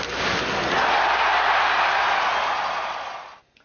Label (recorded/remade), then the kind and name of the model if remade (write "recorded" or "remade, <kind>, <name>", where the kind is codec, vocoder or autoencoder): recorded